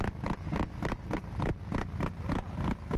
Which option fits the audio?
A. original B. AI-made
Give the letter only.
A